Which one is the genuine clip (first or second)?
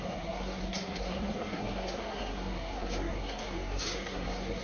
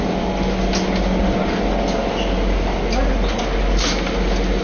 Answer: second